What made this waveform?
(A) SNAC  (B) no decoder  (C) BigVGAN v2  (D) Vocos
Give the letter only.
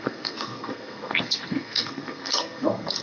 A